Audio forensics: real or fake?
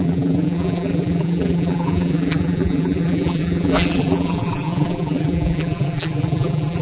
fake